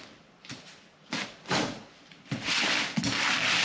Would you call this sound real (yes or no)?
yes